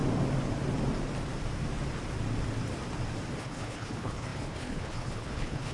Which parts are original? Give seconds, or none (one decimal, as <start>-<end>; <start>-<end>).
0.0-3.4

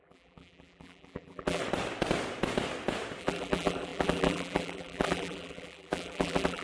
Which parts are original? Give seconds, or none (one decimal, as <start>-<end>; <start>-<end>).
1.6-3.2